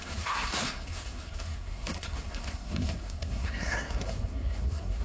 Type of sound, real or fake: fake